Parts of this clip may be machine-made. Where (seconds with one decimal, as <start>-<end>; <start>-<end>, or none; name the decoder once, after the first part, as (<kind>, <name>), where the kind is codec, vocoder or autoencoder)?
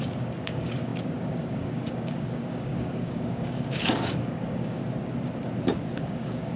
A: 0.0-4.8 (codec, DAC); 6.0-6.6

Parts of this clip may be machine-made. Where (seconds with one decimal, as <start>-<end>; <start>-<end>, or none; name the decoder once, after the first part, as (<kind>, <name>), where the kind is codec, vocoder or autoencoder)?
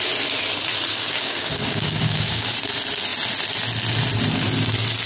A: 0.9-2.5 (codec, DAC)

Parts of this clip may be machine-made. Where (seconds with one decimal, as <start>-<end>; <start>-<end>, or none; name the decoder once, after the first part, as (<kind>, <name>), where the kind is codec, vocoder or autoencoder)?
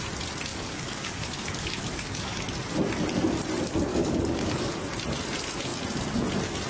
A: 0.5-2.4 (codec, DAC); 3.9-4.8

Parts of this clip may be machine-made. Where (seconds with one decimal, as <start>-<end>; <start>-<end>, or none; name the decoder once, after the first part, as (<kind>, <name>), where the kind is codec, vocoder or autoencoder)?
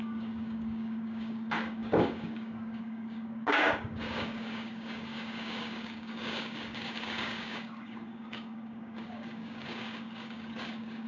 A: 0.0-11.1 (codec, DAC)